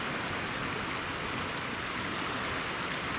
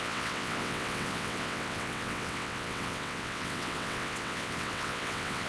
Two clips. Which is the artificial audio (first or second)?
second